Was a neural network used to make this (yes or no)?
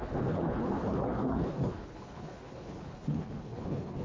yes